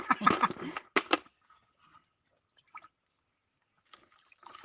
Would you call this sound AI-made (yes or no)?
no